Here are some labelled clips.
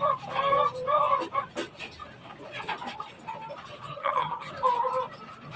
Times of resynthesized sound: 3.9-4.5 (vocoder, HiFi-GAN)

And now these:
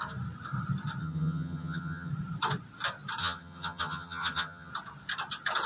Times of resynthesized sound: 1.0-2.1 (vocoder, HiFi-GAN); 3.2-4.7

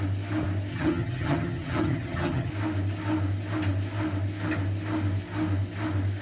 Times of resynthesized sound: 0.7-2.5 (vocoder, HiFi-GAN)

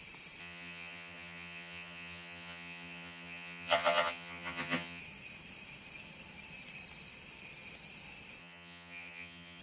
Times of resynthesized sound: 0.4-5.0 (vocoder, HiFi-GAN); 8.4-9.6

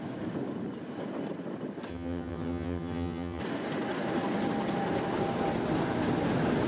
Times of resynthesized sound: 1.9-3.4 (vocoder, HiFi-GAN)

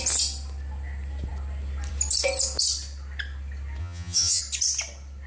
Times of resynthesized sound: 3.8-4.4 (vocoder, HiFi-GAN)

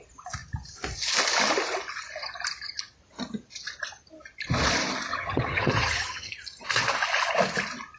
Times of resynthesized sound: 5.1-6.3 (vocoder, HiFi-GAN)